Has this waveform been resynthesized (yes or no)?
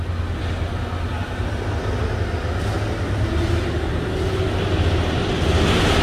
no